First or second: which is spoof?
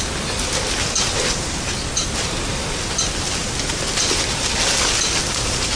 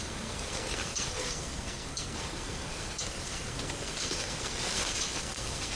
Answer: second